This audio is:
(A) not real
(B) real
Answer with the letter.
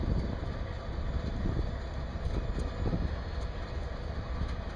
B